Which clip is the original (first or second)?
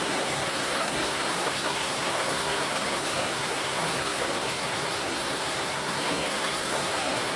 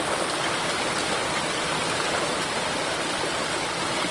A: second